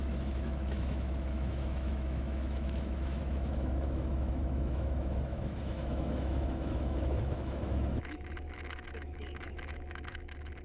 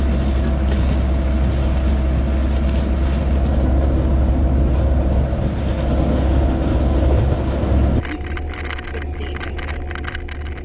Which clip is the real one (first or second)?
second